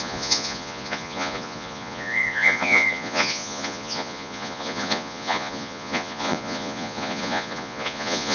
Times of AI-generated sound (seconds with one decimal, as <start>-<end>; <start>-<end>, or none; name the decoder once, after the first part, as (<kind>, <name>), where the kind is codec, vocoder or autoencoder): 0.0-8.3 (vocoder, Vocos)